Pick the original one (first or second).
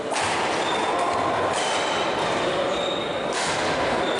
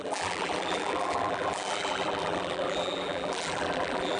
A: first